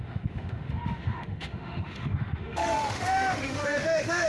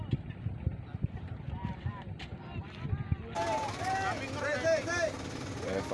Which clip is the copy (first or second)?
first